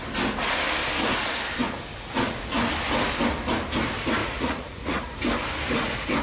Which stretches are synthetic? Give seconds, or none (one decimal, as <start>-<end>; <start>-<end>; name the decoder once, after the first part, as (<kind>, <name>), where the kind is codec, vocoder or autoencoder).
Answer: 1.9-2.5 (vocoder, Vocos); 4.2-5.0